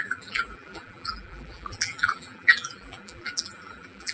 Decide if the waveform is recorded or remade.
remade